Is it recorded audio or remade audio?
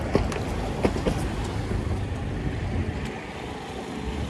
recorded